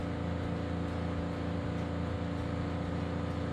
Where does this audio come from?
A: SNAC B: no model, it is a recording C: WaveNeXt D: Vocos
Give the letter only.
B